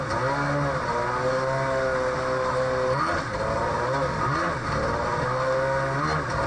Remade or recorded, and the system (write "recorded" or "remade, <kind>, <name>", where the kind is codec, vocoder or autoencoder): recorded